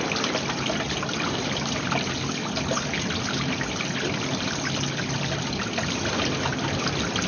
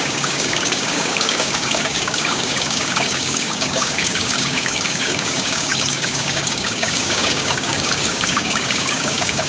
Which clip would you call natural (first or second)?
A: first